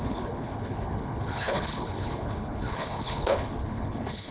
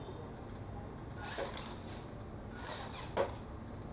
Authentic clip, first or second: second